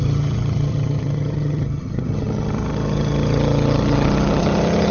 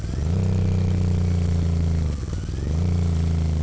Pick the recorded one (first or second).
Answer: second